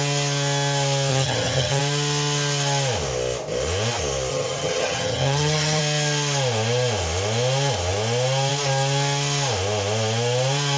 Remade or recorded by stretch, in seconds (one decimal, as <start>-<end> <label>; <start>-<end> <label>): 0.0-1.1 recorded; 1.1-1.8 remade; 1.8-4.3 recorded; 4.3-5.8 remade; 5.8-10.8 recorded